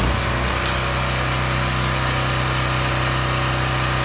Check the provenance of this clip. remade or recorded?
recorded